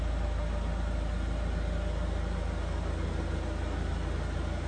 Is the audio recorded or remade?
recorded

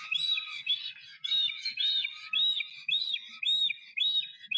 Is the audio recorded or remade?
recorded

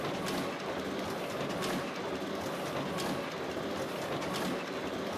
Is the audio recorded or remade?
recorded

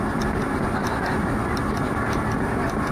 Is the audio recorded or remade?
recorded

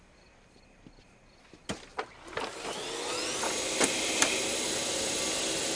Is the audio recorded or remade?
recorded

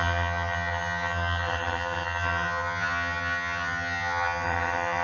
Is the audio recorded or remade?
remade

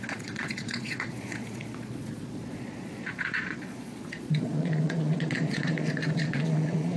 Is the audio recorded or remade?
remade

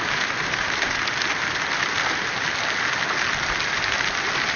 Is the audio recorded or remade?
recorded